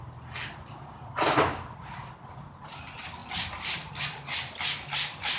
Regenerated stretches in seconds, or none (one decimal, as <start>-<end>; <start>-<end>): 3.2-4.0